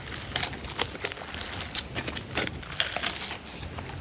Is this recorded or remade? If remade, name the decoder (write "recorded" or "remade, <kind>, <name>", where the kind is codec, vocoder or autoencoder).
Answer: recorded